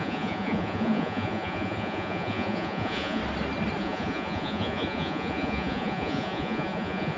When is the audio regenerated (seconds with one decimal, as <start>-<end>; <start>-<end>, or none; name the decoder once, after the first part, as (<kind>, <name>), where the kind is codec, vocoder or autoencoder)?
0.0-3.2 (vocoder, Vocos); 3.8-7.2